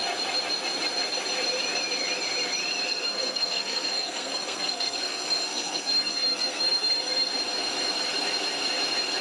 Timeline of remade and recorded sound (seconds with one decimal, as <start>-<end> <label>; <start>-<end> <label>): 0.0-2.9 recorded; 2.9-7.3 remade; 7.3-9.2 recorded